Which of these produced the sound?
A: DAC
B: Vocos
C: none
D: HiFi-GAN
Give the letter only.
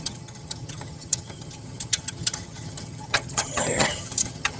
D